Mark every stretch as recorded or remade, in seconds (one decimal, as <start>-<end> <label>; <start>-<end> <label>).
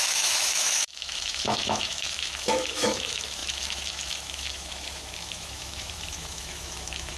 0.0-7.2 remade